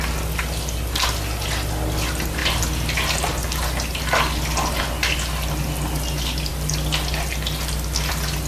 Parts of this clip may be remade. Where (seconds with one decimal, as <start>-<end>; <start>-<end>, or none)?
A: none